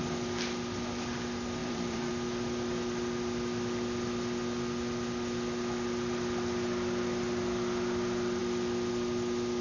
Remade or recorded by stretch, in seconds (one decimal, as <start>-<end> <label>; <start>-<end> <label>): 0.0-1.6 recorded; 1.6-2.1 remade; 2.1-9.6 recorded

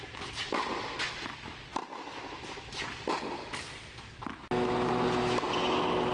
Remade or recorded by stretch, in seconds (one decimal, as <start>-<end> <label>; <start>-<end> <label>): 0.0-6.1 recorded

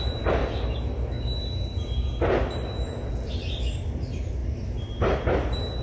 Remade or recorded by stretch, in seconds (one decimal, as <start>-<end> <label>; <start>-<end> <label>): 0.0-0.4 remade; 0.4-3.1 recorded; 3.1-4.4 remade; 4.4-4.9 recorded; 4.9-5.8 remade

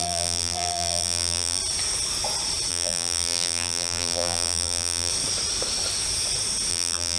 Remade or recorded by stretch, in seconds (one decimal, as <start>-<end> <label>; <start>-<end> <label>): 0.0-1.6 remade; 1.6-2.7 recorded; 2.7-5.1 remade; 5.1-6.7 recorded; 6.7-7.2 remade